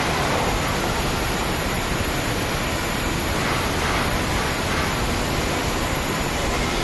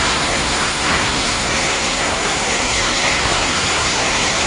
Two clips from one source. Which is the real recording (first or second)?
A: first